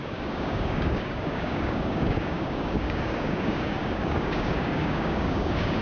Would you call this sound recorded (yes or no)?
no